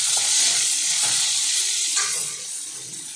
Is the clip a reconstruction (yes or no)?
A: yes